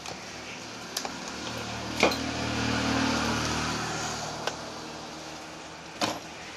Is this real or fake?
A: real